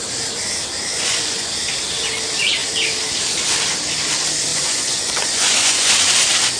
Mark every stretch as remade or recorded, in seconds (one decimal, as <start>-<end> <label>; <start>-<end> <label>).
0.0-0.9 recorded; 0.9-1.5 remade; 1.5-4.5 recorded; 4.5-5.9 remade; 5.9-6.6 recorded